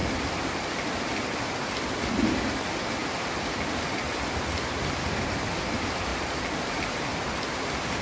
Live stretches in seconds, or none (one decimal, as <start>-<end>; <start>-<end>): 0.0-8.0